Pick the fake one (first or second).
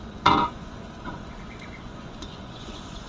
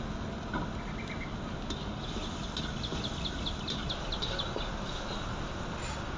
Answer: first